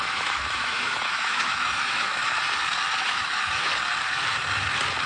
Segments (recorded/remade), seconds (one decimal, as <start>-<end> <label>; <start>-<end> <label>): 0.0-2.2 remade; 2.2-3.0 recorded; 3.0-3.7 remade; 3.7-5.1 recorded